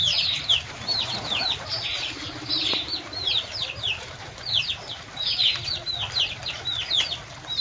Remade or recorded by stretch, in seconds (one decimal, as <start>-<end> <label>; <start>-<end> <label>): 0.0-4.6 remade; 4.6-7.6 recorded